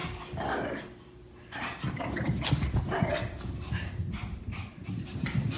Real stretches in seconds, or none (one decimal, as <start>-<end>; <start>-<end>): 0.0-5.6